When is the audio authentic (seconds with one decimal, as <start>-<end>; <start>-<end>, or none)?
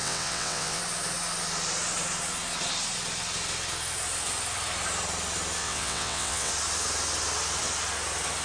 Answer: 0.8-5.6; 6.5-8.4